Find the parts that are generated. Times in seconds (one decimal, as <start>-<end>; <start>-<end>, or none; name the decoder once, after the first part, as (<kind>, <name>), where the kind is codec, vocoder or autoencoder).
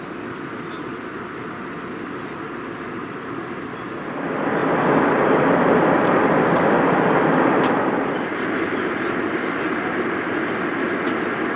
none